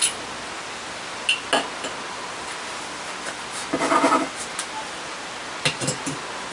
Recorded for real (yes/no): yes